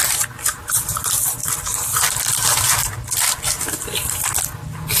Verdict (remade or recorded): recorded